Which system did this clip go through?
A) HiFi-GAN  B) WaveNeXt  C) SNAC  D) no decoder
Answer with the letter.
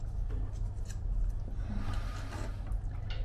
D